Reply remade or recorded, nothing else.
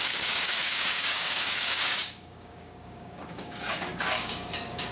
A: remade